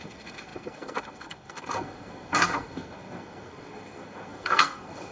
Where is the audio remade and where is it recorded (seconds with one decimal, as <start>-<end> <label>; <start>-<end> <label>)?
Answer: 0.0-5.1 remade